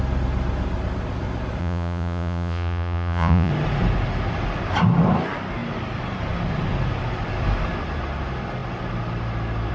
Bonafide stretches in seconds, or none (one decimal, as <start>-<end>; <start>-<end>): 0.0-1.6; 3.5-9.7